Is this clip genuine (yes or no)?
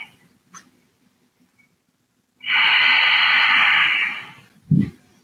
yes